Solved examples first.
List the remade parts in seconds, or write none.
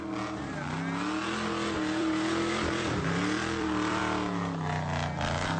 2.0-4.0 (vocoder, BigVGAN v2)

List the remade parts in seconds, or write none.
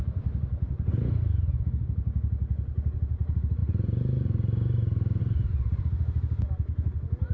0.0-2.4 (vocoder, BigVGAN v2); 3.0-7.3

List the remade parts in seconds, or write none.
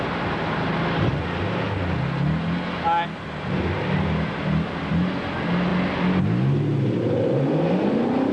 none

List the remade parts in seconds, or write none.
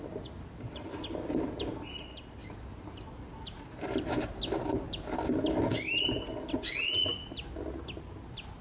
none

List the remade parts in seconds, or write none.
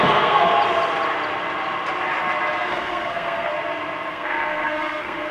0.0-0.5 (codec, SNAC); 2.7-3.5; 4.1-5.3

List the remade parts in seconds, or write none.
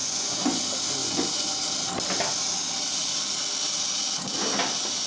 0.0-0.6 (vocoder, Vocos); 1.0-1.6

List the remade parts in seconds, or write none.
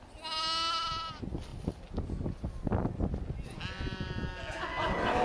none